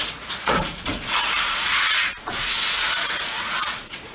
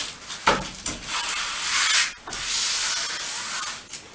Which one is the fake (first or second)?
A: first